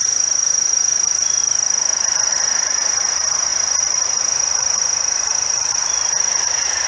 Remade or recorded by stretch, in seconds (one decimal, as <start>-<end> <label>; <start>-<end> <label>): 0.0-1.4 remade; 1.4-2.3 recorded; 2.3-6.9 remade